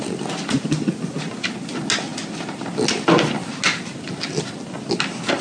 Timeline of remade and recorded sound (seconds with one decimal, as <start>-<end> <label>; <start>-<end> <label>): 0.0-5.4 recorded